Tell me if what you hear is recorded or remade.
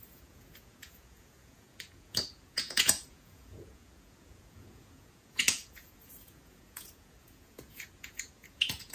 remade